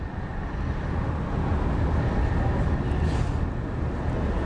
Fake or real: real